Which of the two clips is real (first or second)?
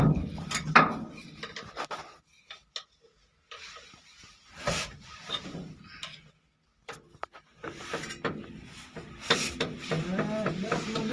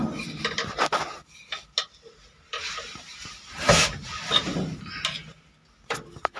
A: second